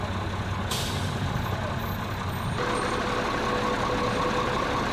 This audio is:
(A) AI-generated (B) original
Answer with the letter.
B